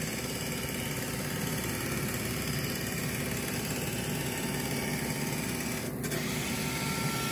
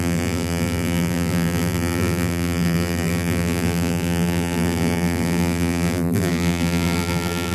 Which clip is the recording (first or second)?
first